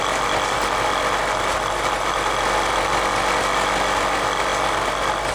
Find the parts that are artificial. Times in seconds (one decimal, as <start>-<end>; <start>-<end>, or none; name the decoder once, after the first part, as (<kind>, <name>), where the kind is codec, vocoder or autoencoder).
none